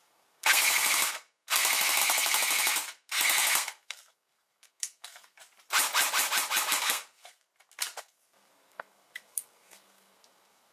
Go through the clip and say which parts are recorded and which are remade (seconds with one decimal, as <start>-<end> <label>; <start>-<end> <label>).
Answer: 0.0-5.4 remade; 5.4-6.7 recorded; 6.7-7.5 remade; 7.5-8.0 recorded; 8.0-10.7 remade